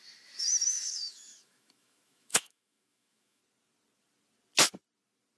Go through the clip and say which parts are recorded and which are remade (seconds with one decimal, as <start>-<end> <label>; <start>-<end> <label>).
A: 0.0-3.4 remade; 3.4-5.4 recorded